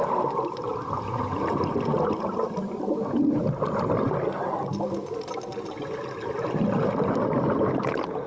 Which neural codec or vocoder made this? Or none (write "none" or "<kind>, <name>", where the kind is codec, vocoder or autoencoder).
none